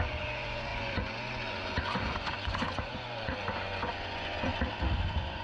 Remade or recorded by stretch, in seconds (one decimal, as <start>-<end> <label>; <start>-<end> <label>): 0.0-4.5 remade; 4.5-5.0 recorded; 5.0-5.4 remade